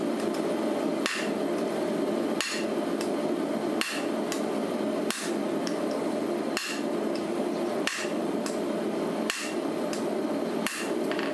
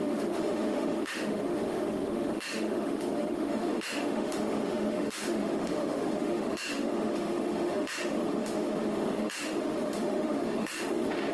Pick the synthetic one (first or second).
second